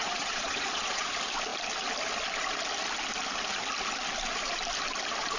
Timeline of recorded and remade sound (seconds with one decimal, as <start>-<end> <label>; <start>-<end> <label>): 0.0-1.1 remade; 1.1-5.4 recorded